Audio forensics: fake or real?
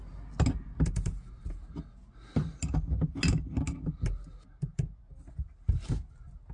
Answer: real